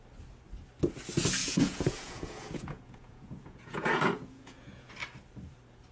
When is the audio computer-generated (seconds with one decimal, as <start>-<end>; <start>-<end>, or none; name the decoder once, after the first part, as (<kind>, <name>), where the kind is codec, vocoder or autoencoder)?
1.4-4.9 (vocoder, Vocos)